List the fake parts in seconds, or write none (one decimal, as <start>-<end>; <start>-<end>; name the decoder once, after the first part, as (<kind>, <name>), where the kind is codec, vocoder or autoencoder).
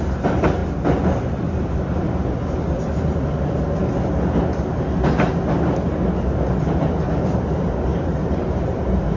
7.9-9.2 (vocoder, BigVGAN v2)